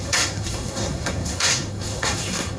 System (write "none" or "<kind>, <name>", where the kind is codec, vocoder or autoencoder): codec, SNAC